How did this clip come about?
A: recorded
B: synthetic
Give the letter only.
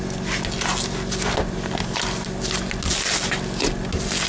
A